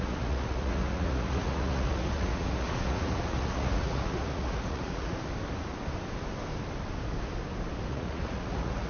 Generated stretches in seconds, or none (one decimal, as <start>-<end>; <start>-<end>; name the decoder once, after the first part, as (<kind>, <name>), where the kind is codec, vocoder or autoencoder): 0.0-5.3 (vocoder, Vocos); 7.9-8.9